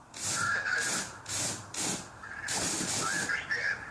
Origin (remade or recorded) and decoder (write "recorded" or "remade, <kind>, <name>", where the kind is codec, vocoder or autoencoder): remade, vocoder, BigVGAN v2